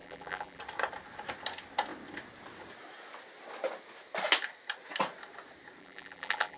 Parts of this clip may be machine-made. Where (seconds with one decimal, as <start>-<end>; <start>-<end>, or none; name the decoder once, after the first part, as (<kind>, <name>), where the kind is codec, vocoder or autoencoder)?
0.0-0.6 (vocoder, BigVGAN v2); 5.8-6.6